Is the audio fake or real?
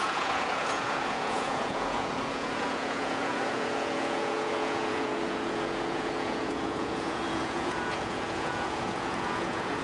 fake